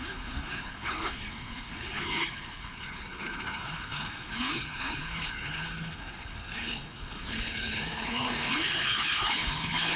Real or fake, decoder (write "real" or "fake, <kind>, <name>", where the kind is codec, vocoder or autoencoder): fake, codec, HILCodec